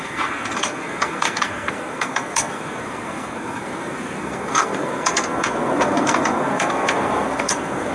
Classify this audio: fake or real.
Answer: fake